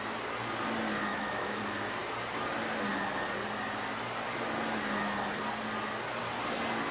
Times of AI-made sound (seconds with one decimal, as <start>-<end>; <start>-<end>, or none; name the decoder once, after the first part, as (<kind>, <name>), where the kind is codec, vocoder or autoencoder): 1.1-1.6 (autoencoder, DAC-VAE)